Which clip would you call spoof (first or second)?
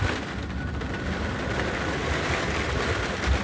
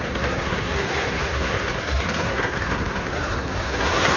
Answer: second